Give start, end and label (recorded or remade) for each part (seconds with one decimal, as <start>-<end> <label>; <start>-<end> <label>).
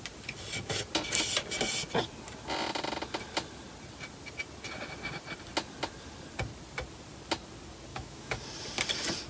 0.0-7.9 recorded; 7.9-8.4 remade; 8.4-9.3 recorded